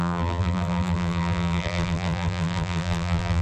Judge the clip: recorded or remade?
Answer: remade